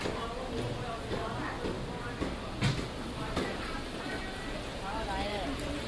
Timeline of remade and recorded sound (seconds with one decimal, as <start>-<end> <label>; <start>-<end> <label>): 0.0-5.9 recorded